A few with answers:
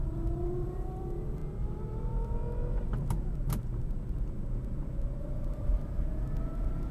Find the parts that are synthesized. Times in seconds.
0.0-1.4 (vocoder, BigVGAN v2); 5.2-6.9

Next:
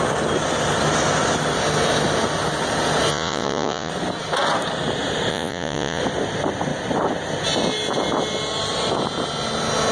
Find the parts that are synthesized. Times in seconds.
3.1-3.9 (vocoder, Vocos); 5.3-6.0

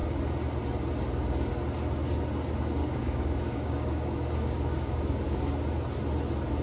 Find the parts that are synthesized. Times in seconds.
2.8-5.6 (codec, DAC)

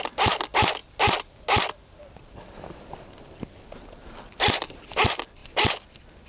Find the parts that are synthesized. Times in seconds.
none

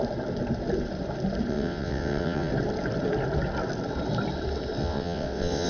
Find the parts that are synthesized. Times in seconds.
1.5-2.5 (vocoder, WaveNeXt); 4.8-5.7